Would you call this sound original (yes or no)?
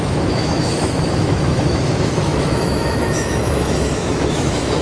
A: no